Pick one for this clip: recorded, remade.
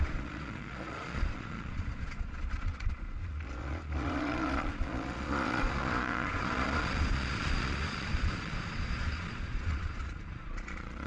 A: remade